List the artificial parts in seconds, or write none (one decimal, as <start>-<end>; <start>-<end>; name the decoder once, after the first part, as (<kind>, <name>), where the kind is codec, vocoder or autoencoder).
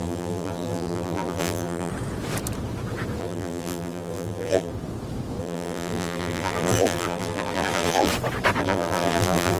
0.0-1.9 (vocoder, BigVGAN v2); 3.2-4.7; 5.4-8.1; 8.6-9.6